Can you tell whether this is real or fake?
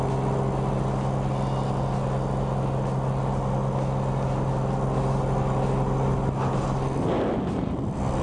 real